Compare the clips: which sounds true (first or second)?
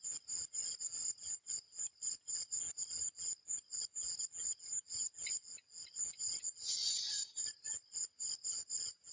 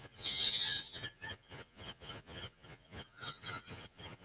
first